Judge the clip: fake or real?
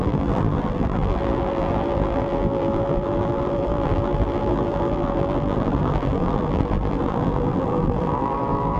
fake